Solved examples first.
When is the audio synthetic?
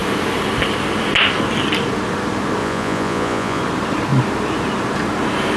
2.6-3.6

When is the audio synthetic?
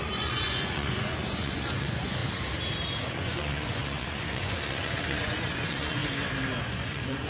0.0-2.2; 3.0-6.0; 6.6-7.3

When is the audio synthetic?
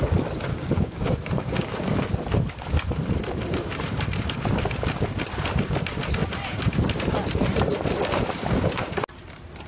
0.5-2.0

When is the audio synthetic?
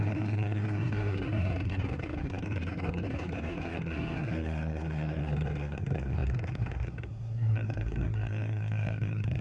0.0-9.4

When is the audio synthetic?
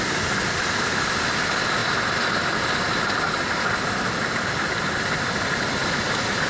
none